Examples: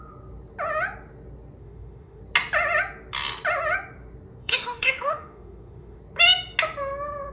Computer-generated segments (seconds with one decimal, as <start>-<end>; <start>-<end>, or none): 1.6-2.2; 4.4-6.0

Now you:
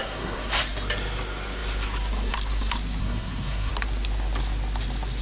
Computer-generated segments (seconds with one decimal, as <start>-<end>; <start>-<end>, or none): 0.0-0.6; 3.0-3.7

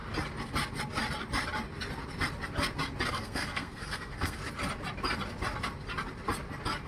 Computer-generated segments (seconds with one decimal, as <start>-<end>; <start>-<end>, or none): 3.1-4.4

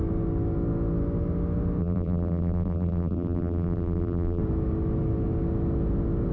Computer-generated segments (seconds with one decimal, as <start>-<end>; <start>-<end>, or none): 1.8-4.4